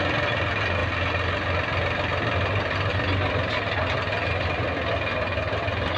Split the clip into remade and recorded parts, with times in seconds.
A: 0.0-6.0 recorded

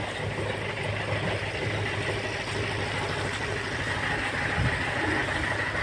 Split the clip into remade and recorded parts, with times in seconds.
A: 0.0-5.8 recorded

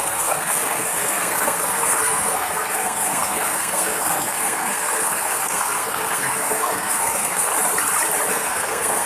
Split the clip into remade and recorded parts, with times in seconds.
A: 0.0-7.5 remade; 7.5-8.3 recorded; 8.3-9.1 remade

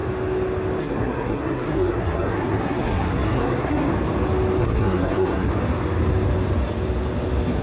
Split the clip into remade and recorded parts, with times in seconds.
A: 0.0-0.8 recorded; 0.8-3.9 remade; 3.9-4.6 recorded; 4.6-5.5 remade; 5.5-7.6 recorded

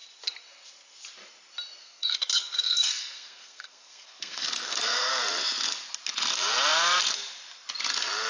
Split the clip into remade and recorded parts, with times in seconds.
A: 0.0-1.8 recorded; 1.8-5.1 remade; 5.1-8.3 recorded

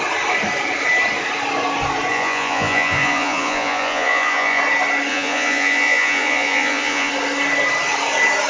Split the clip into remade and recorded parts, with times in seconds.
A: 0.0-2.1 recorded; 2.1-4.6 remade; 4.6-5.1 recorded; 5.1-7.1 remade; 7.1-8.5 recorded

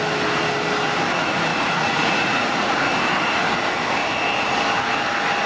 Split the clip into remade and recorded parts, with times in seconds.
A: 0.0-1.5 recorded; 1.5-2.9 remade; 2.9-5.5 recorded